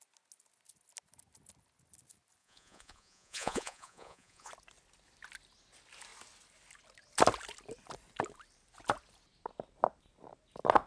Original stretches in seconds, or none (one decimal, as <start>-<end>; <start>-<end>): 0.0-2.4; 4.5-10.9